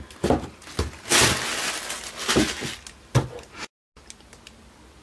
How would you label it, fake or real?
real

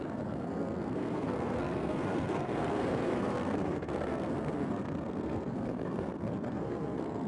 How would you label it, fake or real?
fake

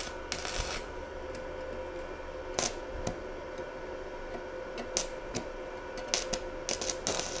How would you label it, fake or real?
real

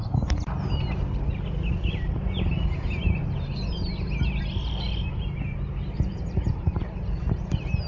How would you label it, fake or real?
real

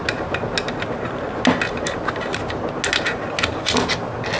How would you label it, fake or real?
real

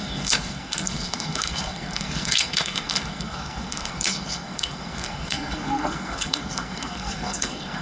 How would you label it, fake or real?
fake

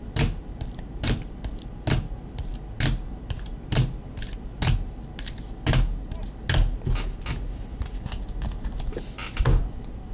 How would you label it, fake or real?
real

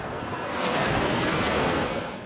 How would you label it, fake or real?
fake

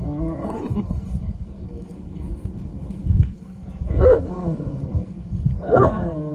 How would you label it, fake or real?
fake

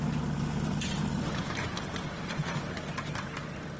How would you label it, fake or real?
real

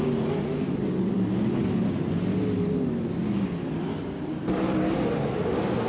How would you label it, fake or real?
real